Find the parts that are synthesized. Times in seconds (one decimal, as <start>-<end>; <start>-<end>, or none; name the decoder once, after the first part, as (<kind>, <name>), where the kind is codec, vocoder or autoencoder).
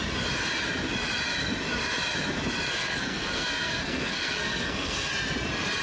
2.7-5.1 (codec, SNAC)